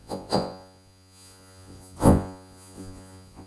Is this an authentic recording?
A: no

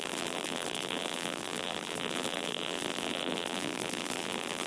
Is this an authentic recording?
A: no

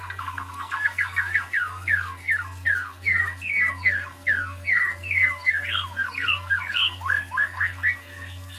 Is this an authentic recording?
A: no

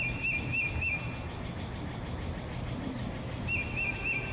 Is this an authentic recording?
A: yes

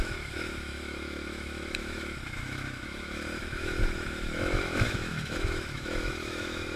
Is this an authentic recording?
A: no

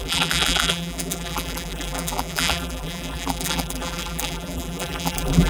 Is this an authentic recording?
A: no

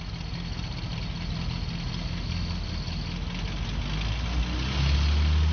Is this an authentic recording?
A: yes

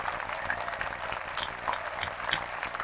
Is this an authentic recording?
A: yes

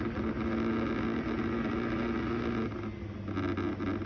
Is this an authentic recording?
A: yes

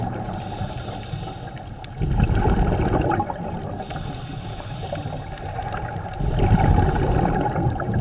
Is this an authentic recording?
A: yes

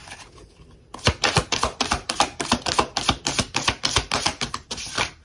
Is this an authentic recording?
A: yes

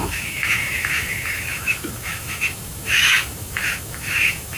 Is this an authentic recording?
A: no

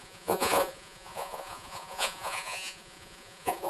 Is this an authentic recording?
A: no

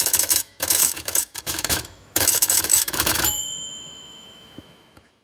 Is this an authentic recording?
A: no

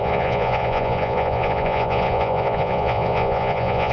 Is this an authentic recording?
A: no